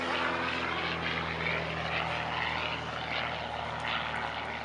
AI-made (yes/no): no